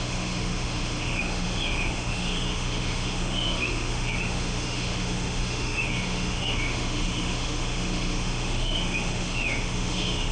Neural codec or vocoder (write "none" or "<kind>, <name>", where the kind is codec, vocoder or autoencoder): autoencoder, DAC-VAE